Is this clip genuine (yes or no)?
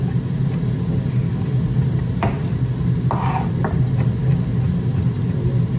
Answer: yes